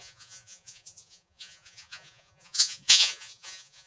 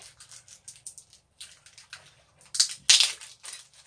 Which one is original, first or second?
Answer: second